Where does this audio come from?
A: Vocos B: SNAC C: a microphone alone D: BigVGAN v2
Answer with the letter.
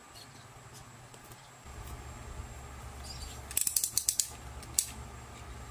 C